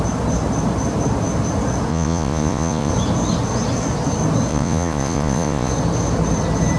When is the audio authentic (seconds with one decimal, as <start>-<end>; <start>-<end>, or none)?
0.0-1.9; 2.9-4.5; 5.7-6.8